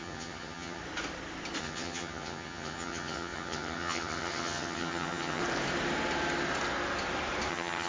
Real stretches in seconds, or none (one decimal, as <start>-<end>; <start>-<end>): 0.8-1.6; 5.4-7.5